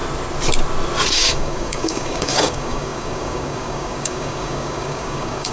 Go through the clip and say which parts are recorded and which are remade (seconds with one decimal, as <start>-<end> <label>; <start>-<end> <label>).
0.0-1.1 recorded; 1.1-5.5 remade

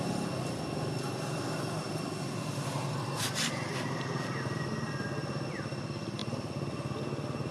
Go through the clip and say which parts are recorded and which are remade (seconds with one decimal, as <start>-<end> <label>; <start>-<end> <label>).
0.0-7.5 recorded

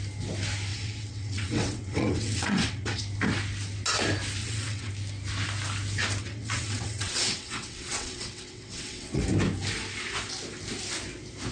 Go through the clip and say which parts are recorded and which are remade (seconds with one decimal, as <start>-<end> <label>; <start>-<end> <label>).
0.0-0.7 recorded; 0.7-3.0 remade; 3.0-4.4 recorded; 4.4-4.9 remade; 4.9-6.2 recorded; 6.2-9.2 remade; 9.2-11.5 recorded

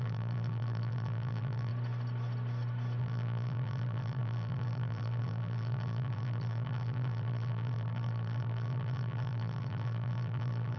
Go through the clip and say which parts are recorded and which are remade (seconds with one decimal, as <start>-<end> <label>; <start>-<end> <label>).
0.0-1.7 remade; 1.7-3.0 recorded; 3.0-10.8 remade

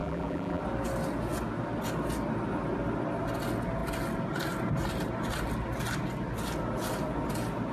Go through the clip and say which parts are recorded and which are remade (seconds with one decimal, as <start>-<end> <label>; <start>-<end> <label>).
0.0-0.6 remade; 0.6-7.7 recorded

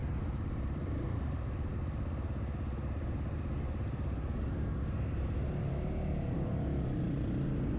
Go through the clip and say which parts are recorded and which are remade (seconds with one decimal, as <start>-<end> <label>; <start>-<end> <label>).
0.0-7.8 recorded